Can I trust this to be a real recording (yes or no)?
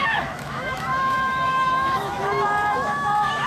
no